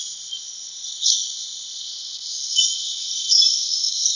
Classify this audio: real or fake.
real